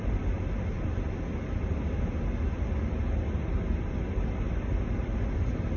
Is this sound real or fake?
real